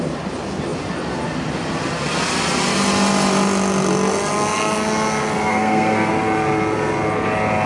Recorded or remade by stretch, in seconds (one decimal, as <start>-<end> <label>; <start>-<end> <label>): 0.0-5.5 recorded; 5.5-6.1 remade; 6.1-7.7 recorded